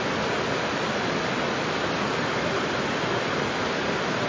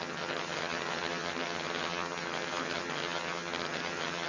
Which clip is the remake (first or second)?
second